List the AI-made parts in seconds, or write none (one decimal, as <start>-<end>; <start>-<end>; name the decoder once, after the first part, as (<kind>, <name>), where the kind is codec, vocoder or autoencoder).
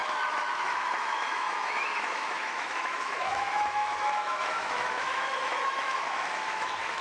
0.0-7.0 (autoencoder, DAC-VAE)